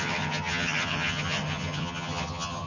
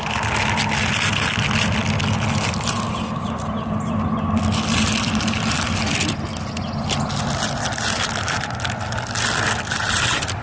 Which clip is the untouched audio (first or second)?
second